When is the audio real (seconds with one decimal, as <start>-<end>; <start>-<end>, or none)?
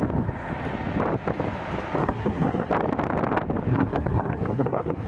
0.0-2.0; 2.7-3.7